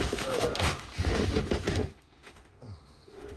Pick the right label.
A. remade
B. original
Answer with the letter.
A